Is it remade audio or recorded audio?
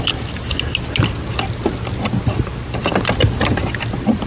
recorded